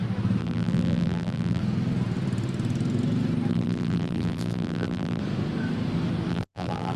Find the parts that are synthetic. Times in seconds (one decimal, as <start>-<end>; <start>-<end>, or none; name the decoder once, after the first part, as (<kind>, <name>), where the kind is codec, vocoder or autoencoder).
0.4-1.6 (vocoder, BigVGAN v2); 3.5-5.2; 6.3-7.0